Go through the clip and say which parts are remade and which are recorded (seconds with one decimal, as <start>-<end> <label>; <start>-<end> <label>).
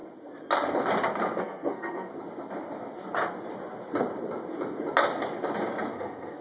0.0-1.4 recorded; 1.4-2.1 remade; 2.1-5.9 recorded; 5.9-6.4 remade